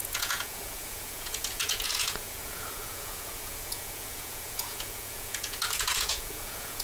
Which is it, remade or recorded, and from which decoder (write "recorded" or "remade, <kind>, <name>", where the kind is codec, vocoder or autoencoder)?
remade, vocoder, Vocos